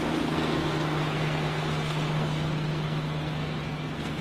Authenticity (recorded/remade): remade